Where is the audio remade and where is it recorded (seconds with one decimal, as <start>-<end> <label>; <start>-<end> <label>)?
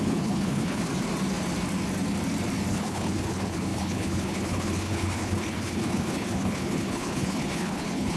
0.0-0.9 remade; 0.9-2.7 recorded; 2.7-8.2 remade